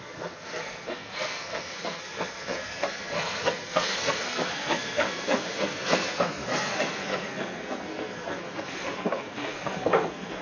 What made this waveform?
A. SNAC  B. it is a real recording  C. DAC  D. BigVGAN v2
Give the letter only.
A